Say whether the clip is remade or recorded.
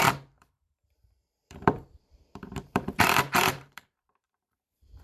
remade